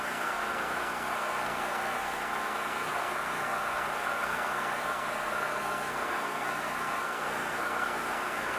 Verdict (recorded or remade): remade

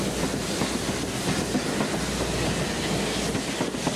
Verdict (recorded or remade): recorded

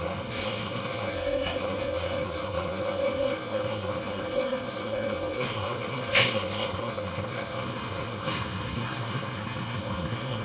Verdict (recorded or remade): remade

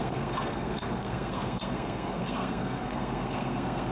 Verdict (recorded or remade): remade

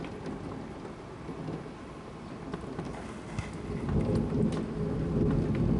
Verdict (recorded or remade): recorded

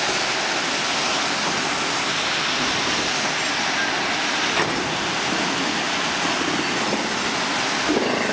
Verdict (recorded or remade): recorded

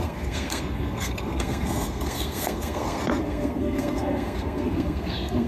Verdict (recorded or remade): remade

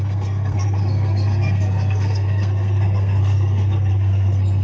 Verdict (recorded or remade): remade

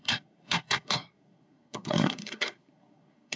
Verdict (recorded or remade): remade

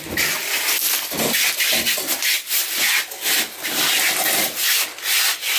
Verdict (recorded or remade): recorded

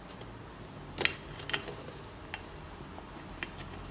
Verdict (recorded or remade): recorded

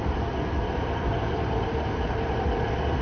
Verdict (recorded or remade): recorded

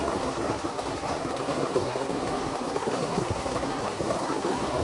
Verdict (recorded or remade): remade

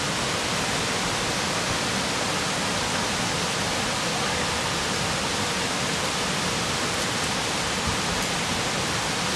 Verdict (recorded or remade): recorded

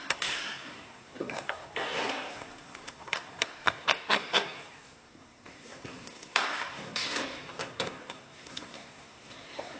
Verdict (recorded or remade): remade